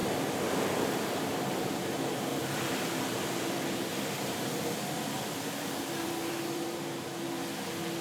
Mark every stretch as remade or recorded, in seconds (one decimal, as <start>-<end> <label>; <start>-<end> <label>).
0.0-1.4 remade; 1.4-2.3 recorded; 2.3-7.0 remade; 7.0-8.0 recorded